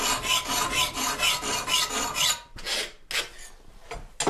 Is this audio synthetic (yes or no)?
no